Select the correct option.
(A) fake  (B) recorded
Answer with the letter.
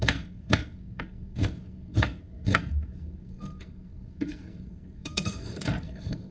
A